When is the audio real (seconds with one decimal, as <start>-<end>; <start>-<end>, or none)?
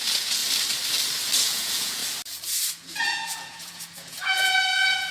0.4-1.4; 2.0-2.8